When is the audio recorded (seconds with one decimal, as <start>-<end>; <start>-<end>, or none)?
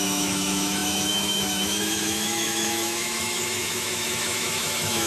none